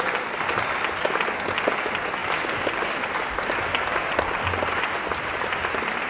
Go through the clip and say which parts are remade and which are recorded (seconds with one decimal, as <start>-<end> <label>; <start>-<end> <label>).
0.0-6.1 recorded